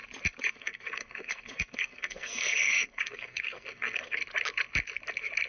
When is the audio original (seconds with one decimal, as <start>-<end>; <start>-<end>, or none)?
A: 0.0-0.5; 4.2-5.5